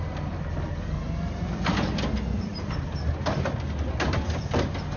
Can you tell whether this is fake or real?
real